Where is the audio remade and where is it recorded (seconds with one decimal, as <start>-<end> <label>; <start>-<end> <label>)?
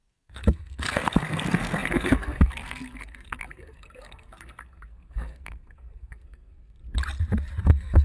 0.0-6.8 remade; 6.8-7.6 recorded; 7.6-8.0 remade